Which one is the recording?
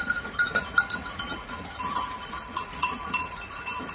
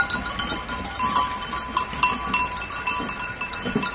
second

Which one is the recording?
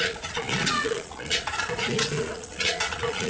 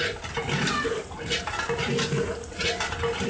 second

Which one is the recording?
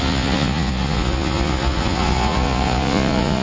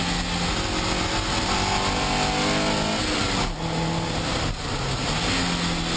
second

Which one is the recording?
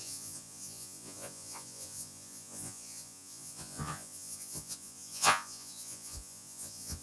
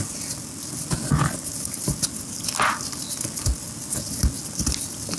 second